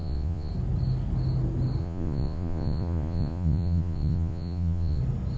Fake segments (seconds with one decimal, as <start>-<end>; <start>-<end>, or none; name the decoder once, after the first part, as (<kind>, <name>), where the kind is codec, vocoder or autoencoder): 0.0-0.5 (vocoder, Vocos); 1.8-5.0